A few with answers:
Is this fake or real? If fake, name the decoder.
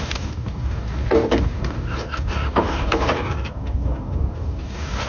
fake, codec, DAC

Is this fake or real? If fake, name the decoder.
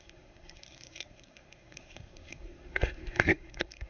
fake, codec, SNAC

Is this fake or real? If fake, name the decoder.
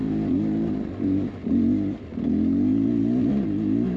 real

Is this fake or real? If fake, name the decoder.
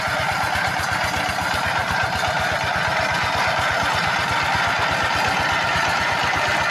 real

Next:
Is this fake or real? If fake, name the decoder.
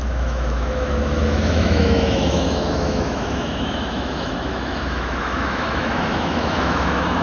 fake, autoencoder, DAC-VAE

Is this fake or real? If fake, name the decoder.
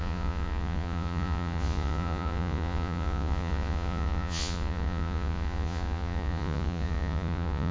fake, vocoder, Vocos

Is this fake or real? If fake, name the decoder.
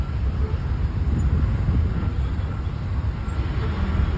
real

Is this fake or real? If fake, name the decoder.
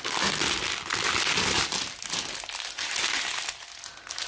real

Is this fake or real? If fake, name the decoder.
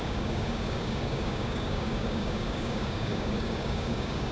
fake, codec, DAC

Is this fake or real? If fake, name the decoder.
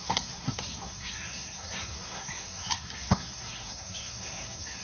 fake, codec, SNAC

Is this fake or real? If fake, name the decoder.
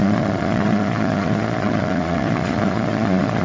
fake, vocoder, Vocos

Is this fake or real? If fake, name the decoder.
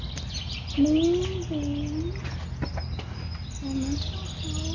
real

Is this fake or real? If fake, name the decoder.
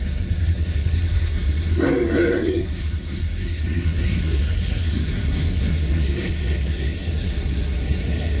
fake, codec, SNAC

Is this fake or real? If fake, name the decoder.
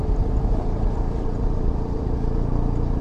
fake, vocoder, BigVGAN v2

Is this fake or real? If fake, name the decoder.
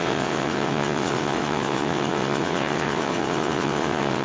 fake, vocoder, WaveNeXt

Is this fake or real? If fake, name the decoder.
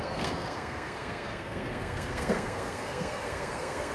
fake, codec, SNAC